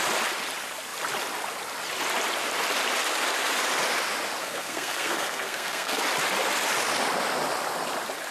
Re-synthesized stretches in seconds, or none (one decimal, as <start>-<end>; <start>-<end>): 4.4-6.0